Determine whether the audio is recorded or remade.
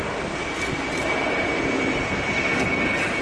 recorded